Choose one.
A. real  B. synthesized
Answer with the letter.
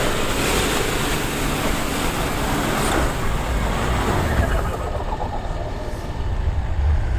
A